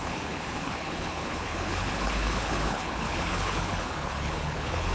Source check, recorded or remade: remade